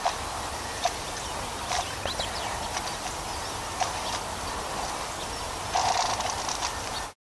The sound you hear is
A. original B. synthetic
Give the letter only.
A